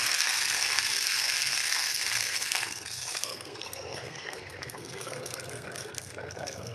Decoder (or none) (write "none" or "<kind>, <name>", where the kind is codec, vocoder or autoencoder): codec, SNAC